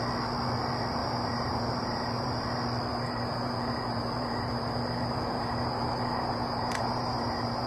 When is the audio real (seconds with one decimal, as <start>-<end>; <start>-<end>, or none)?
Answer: 0.0-1.0; 2.4-2.9

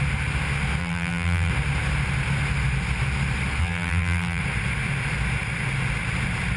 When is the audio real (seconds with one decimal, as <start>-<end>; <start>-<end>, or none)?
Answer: 0.0-0.8; 1.5-3.6; 4.4-6.6

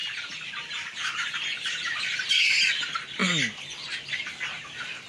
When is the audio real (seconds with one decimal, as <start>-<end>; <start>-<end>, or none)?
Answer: 2.2-5.1

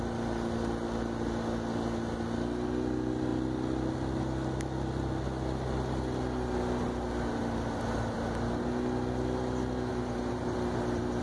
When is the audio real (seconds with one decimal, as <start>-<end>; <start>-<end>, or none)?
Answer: 0.0-9.9